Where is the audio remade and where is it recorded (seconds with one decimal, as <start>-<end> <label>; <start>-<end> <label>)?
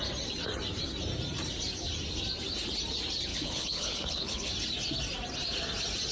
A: 0.0-3.3 recorded; 3.3-4.5 remade; 4.5-6.1 recorded